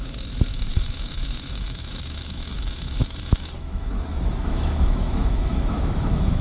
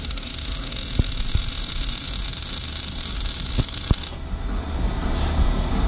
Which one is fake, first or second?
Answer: first